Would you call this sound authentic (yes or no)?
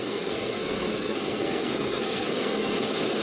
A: no